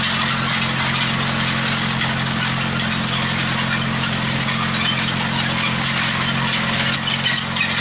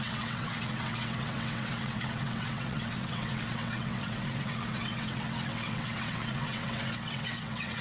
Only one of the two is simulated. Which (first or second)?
second